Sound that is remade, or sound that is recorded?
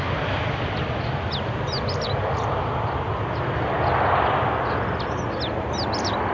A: recorded